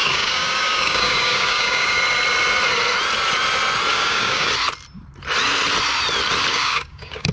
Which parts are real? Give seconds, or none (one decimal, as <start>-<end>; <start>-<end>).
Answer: 2.0-3.9; 4.5-6.5